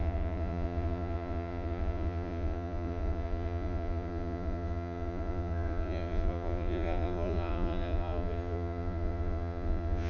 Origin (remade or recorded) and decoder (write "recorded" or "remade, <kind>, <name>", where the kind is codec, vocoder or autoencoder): remade, vocoder, Vocos